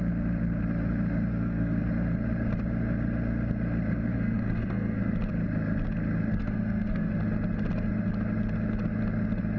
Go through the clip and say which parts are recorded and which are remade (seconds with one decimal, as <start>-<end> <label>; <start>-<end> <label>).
0.0-1.3 recorded; 1.3-1.8 remade; 1.8-4.1 recorded; 4.1-5.0 remade; 5.0-6.3 recorded; 6.3-7.1 remade; 7.1-9.6 recorded